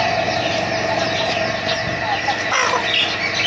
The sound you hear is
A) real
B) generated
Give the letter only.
A